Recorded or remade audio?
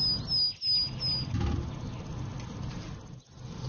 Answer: recorded